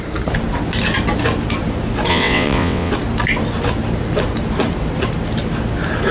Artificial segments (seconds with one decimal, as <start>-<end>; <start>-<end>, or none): 2.1-2.9